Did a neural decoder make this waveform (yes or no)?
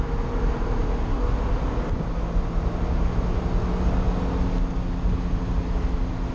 no